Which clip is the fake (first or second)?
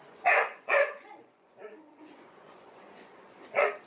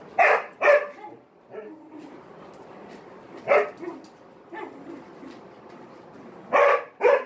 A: first